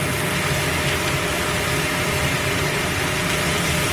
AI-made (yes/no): no